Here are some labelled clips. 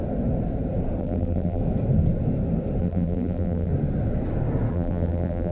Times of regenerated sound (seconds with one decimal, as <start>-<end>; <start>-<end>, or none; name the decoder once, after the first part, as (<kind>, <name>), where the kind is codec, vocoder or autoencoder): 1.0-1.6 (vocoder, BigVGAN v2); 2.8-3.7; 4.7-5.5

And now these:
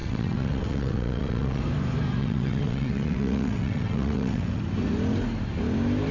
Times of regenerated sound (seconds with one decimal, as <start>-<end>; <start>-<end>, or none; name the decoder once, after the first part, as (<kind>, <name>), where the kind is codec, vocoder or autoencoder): 0.0-1.6 (vocoder, WaveNeXt); 2.2-4.6

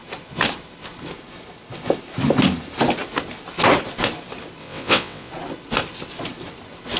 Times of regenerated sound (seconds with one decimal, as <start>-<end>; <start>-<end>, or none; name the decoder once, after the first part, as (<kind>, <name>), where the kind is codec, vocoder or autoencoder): 4.6-5.3 (vocoder, WaveNeXt)

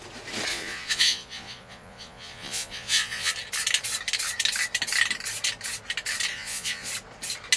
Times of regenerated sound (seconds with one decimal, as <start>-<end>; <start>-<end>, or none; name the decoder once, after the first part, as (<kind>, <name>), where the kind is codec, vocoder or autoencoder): 0.5-3.3 (vocoder, Vocos); 6.3-6.9

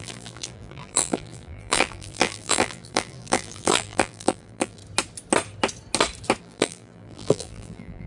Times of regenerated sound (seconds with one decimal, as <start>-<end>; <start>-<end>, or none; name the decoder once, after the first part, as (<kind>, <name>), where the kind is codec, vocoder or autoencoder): 0.0-4.8 (vocoder, BigVGAN v2); 6.4-8.1

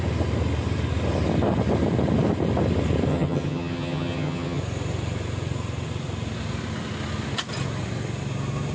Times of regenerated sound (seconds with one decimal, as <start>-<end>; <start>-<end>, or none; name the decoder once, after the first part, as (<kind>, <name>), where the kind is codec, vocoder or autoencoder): 3.1-4.6 (vocoder, HiFi-GAN)

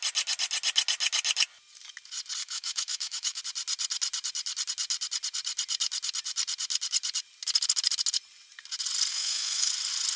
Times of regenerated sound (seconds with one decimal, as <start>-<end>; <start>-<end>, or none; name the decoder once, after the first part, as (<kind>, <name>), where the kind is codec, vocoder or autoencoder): 2.4-3.4 (autoencoder, DAC-VAE); 9.1-9.7

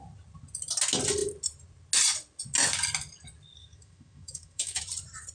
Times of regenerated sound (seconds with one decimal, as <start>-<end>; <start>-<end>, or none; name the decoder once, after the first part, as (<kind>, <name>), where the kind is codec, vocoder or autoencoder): 3.6-4.8 (autoencoder, DAC-VAE)